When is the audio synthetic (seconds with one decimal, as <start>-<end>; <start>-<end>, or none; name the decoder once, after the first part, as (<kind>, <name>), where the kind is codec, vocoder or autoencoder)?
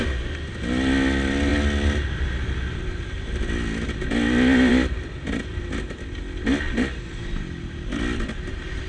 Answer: none